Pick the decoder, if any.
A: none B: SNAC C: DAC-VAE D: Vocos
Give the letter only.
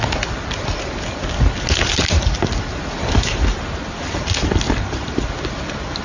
A